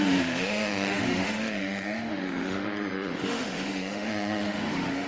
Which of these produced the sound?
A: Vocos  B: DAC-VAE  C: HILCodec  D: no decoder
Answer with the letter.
B